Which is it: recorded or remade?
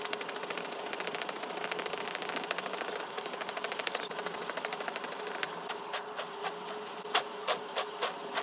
recorded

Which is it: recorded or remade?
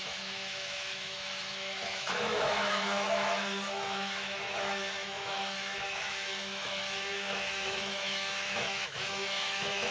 remade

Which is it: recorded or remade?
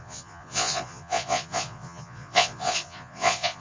remade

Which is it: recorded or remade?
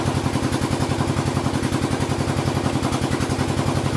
recorded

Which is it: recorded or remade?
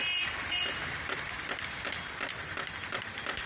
recorded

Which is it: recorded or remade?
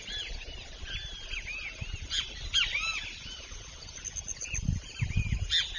recorded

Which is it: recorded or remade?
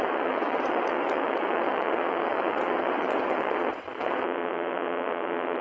remade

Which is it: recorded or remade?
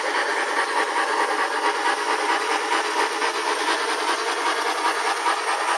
remade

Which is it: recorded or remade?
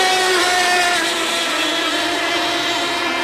recorded